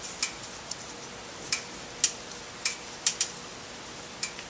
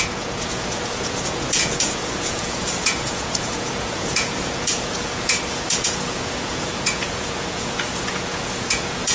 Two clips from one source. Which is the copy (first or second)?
second